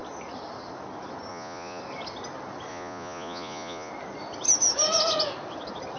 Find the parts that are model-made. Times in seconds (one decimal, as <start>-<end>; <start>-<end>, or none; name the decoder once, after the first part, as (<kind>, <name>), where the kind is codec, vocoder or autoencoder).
1.3-1.8 (vocoder, Vocos); 2.7-3.9